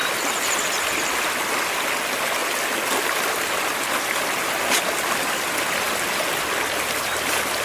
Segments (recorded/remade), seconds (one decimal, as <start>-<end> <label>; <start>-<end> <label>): 0.0-7.6 recorded